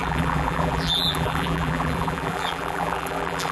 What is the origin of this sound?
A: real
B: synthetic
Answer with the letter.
B